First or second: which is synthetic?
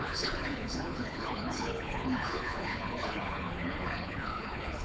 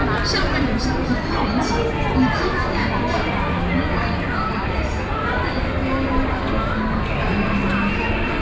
first